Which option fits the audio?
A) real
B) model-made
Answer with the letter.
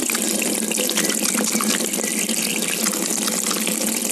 A